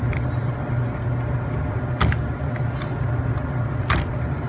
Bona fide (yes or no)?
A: yes